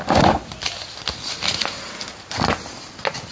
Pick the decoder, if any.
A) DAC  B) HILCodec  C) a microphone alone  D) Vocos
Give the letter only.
C